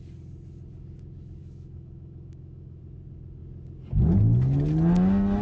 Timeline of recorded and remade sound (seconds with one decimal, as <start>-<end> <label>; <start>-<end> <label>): 0.0-1.4 recorded; 1.4-2.8 remade; 2.8-5.4 recorded